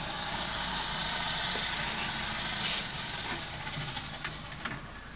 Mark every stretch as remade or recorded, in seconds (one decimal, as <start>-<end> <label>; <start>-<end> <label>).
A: 0.0-0.9 remade; 0.9-2.8 recorded; 2.8-3.2 remade; 3.2-5.2 recorded